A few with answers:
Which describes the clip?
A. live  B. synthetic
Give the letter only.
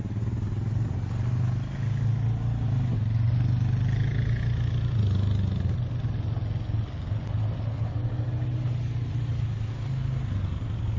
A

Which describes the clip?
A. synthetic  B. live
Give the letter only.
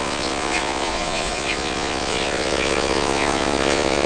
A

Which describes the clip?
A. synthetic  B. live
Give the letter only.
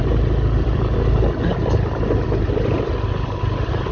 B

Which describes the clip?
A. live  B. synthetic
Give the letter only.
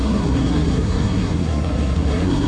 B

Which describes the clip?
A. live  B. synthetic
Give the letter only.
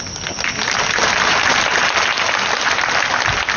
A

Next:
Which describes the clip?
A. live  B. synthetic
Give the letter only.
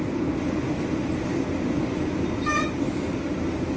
A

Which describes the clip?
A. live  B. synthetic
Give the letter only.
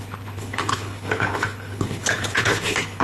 B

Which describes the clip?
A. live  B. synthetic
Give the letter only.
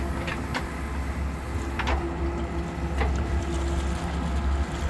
A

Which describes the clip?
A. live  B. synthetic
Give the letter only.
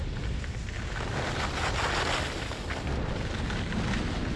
A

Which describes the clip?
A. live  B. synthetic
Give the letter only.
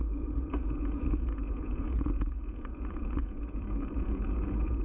B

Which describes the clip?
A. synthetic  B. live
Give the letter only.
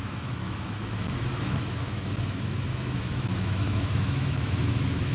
A